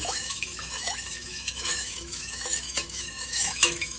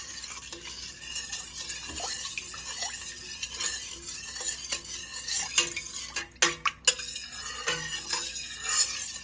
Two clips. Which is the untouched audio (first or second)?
second